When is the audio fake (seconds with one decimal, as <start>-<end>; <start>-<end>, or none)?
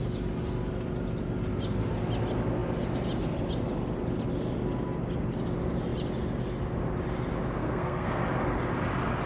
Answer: 7.6-8.2